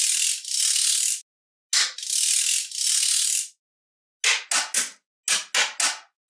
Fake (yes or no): no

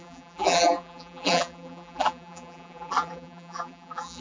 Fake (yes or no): yes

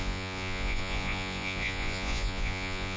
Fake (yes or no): yes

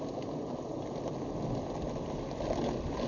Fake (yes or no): no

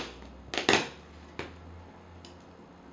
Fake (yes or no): no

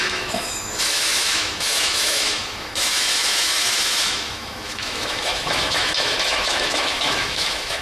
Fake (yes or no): yes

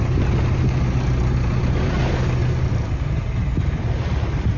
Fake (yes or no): no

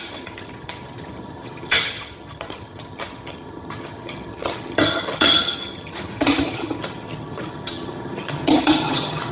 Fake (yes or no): yes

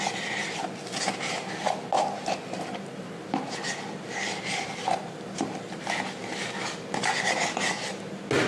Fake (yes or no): no